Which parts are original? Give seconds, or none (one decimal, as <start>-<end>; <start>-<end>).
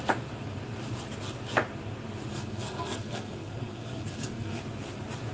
0.0-2.3; 4.6-5.3